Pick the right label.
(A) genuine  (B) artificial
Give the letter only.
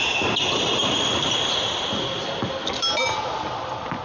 A